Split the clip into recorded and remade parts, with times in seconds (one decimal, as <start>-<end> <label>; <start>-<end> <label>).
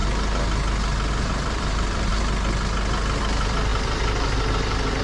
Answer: 0.0-1.1 recorded; 1.1-2.1 remade; 2.1-3.2 recorded; 3.2-5.0 remade